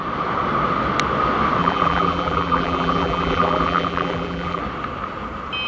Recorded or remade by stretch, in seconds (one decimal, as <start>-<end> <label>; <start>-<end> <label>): 0.0-1.6 recorded; 1.6-4.6 remade; 4.6-5.7 recorded